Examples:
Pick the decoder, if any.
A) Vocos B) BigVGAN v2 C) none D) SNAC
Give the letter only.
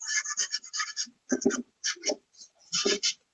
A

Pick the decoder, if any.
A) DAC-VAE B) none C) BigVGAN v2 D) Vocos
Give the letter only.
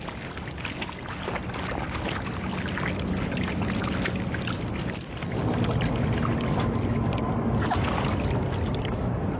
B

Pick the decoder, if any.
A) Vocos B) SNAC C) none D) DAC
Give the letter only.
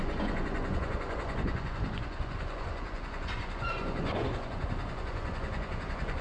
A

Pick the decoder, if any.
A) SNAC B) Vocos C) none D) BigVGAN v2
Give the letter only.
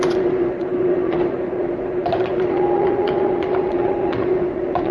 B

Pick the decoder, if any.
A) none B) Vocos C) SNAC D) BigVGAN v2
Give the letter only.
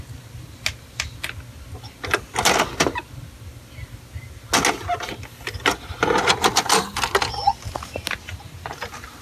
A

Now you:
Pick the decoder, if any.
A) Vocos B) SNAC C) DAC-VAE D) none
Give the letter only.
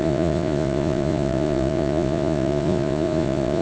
A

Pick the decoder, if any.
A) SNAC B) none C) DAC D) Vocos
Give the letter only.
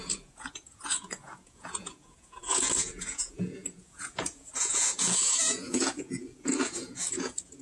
D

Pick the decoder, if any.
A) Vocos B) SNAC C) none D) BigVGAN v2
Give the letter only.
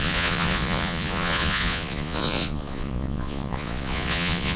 A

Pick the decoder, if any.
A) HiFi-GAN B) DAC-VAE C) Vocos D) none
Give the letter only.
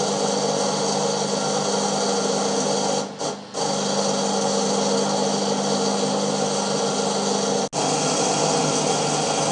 D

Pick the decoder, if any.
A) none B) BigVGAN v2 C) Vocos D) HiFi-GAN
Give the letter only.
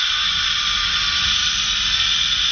A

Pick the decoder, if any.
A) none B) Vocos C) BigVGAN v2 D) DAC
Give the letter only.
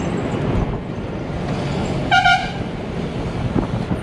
A